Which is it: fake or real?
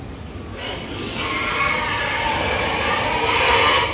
real